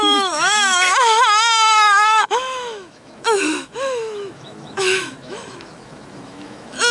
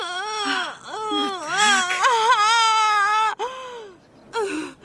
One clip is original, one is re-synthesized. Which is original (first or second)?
second